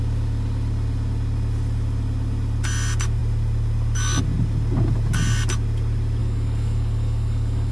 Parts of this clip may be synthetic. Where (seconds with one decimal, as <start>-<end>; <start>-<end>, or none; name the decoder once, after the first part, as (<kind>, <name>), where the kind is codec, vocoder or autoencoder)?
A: 6.2-7.7 (codec, DAC)